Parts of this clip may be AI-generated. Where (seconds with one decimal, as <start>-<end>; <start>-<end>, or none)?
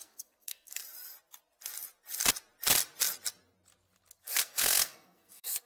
0.0-0.8; 4.2-5.7